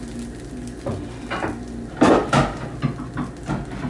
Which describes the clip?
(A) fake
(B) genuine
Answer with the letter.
B